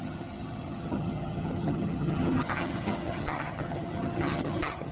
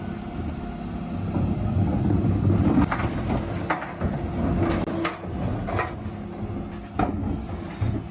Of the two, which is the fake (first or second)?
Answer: first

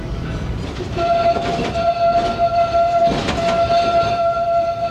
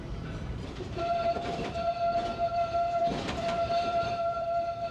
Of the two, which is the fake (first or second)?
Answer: second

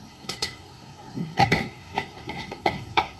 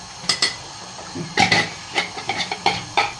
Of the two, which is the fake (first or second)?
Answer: first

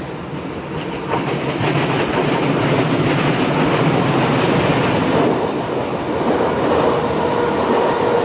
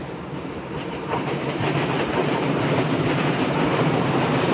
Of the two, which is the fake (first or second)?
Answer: second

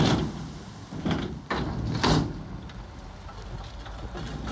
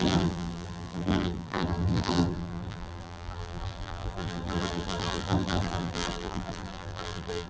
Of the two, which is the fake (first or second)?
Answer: second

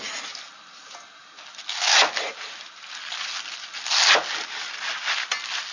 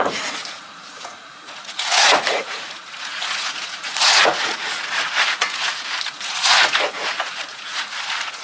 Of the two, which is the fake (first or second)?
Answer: second